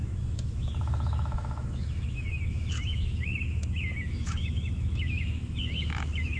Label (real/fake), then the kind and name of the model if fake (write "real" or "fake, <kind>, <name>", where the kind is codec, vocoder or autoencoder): fake, autoencoder, DAC-VAE